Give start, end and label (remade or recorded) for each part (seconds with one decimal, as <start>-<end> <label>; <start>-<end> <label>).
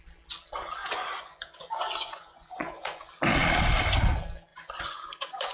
0.0-0.8 recorded; 0.8-3.1 remade; 3.1-4.5 recorded; 4.5-5.5 remade